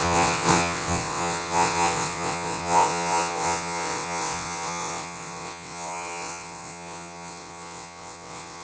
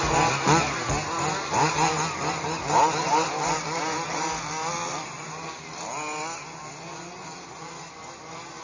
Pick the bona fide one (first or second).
second